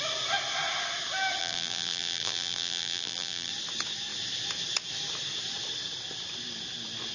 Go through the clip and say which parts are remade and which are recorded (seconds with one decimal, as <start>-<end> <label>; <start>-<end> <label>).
0.0-1.4 recorded; 1.4-3.5 remade; 3.5-7.1 recorded